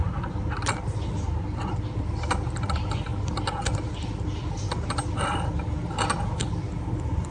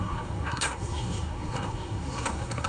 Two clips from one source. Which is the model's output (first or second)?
second